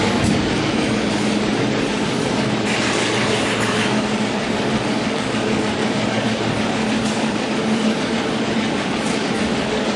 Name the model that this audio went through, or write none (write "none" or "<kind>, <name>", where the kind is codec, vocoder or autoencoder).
codec, DAC